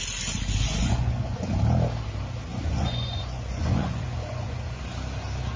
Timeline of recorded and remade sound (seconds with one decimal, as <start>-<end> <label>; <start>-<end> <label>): 0.0-0.8 recorded; 0.8-1.5 remade; 1.5-2.5 recorded; 2.5-4.8 remade; 4.8-5.6 recorded